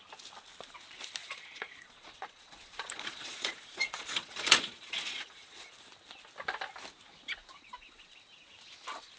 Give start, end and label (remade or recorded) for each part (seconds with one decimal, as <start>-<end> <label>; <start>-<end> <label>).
0.0-1.2 recorded; 1.2-5.7 remade; 5.7-9.2 recorded